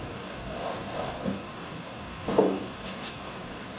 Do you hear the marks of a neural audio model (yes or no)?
yes